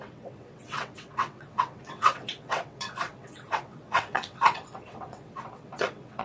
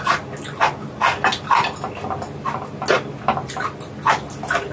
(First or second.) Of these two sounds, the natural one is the second